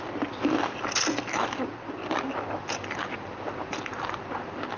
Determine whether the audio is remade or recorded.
remade